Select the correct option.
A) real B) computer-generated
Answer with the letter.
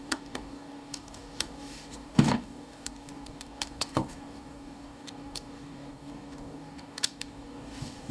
B